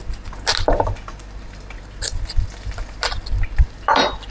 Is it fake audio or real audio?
real